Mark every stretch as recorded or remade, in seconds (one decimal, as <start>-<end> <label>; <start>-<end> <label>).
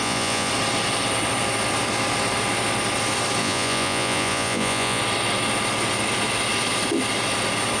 0.0-0.5 remade; 0.5-3.4 recorded; 3.4-5.0 remade; 5.0-7.8 recorded